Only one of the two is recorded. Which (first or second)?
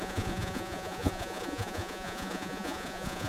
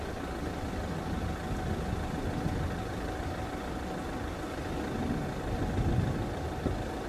second